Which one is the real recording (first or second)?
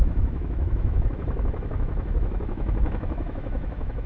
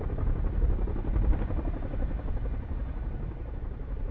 second